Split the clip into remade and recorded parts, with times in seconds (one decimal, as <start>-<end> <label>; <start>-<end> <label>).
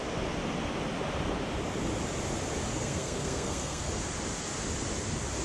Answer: 0.0-2.7 recorded; 2.7-3.9 remade; 3.9-5.4 recorded